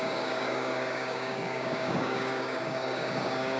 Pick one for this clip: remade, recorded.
remade